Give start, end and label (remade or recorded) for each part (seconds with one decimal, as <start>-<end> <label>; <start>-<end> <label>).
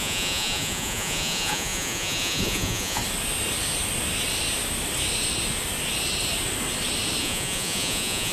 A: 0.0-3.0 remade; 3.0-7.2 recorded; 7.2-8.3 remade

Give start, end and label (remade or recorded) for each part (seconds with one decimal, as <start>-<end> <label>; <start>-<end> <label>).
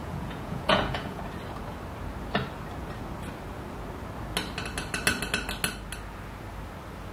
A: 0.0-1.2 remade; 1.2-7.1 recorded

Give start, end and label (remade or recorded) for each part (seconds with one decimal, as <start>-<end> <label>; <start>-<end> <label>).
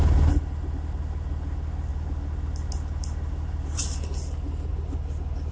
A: 0.0-5.5 recorded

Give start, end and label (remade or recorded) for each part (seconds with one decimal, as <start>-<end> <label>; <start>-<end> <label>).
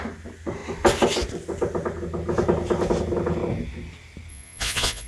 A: 0.0-4.3 recorded; 4.3-5.1 remade